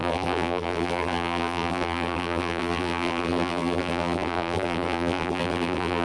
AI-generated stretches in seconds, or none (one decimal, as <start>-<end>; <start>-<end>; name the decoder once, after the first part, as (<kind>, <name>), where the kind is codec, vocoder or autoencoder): 0.0-6.0 (vocoder, BigVGAN v2)